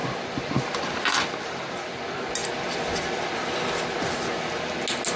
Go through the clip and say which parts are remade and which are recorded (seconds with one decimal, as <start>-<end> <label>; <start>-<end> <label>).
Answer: 0.0-1.9 remade; 1.9-2.4 recorded; 2.4-3.8 remade; 3.8-5.2 recorded